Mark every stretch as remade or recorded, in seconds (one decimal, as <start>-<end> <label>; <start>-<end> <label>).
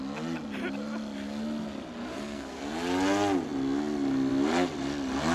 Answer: 0.0-2.1 recorded; 2.1-2.6 remade; 2.6-5.3 recorded